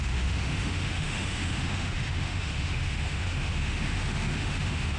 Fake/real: fake